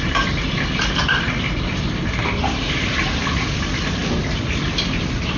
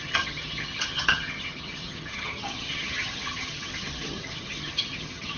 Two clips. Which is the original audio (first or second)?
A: first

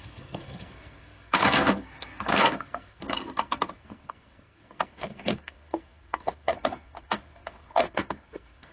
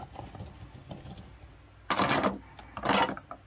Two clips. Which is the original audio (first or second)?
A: second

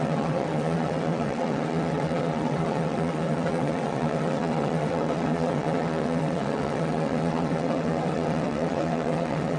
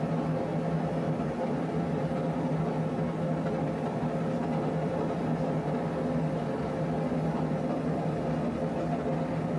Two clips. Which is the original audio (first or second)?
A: second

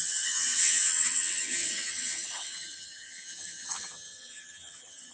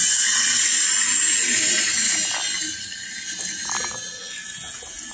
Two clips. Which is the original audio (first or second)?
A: second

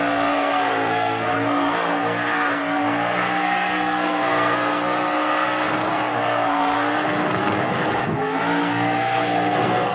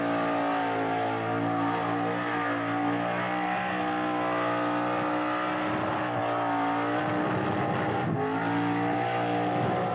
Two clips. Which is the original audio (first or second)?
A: second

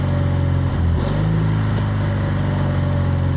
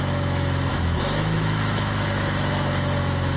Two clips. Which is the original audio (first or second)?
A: first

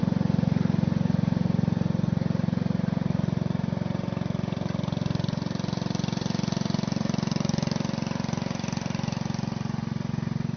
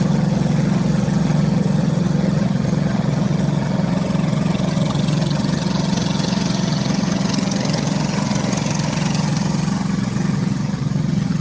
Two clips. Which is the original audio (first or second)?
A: first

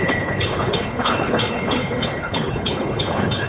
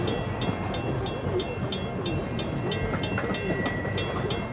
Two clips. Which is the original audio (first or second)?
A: second